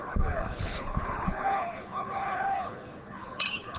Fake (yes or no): yes